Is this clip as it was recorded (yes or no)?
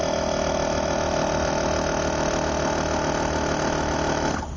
yes